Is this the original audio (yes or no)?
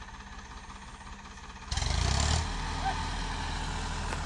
yes